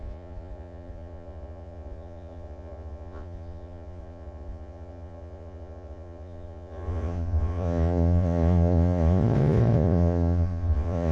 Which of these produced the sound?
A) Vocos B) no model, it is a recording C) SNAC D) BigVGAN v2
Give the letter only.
A